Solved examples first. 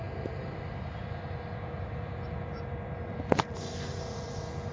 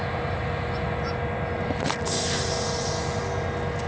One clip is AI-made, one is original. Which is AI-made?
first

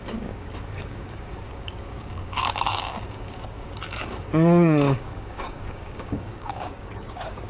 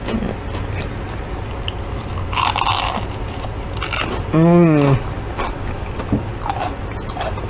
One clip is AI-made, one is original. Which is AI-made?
first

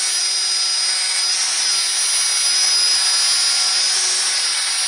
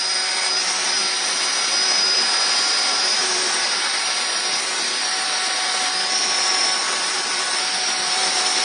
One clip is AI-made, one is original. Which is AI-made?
second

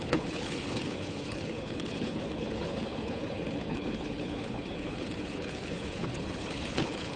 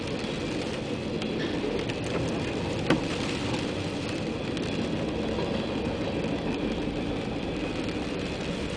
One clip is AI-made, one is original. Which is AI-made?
first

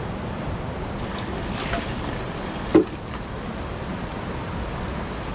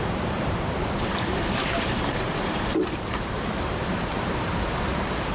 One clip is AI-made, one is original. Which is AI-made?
second